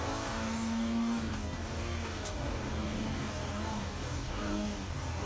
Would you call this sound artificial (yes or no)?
yes